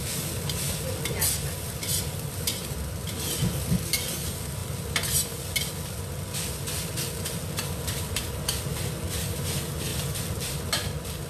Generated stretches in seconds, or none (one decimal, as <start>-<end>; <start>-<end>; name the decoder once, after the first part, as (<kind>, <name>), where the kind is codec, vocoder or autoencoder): none